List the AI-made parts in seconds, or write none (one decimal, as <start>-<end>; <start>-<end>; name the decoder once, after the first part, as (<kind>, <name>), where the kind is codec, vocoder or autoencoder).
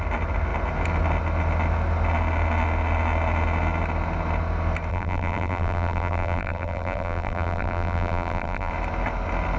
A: 4.9-8.7 (vocoder, BigVGAN v2)